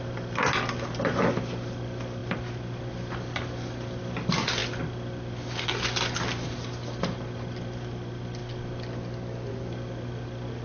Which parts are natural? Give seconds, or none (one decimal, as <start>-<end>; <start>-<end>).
0.0-10.6